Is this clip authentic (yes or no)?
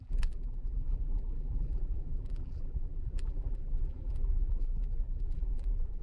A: no